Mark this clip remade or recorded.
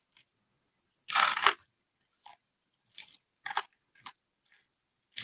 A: recorded